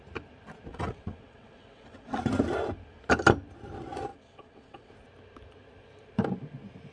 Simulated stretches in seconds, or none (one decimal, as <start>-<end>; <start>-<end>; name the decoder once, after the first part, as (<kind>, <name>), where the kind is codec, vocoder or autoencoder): 0.7-2.2 (vocoder, WaveNeXt); 4.1-4.9